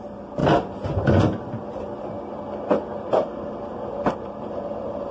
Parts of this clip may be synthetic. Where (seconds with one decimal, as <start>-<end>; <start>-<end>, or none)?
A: 0.0-0.4; 1.1-1.6; 3.1-5.1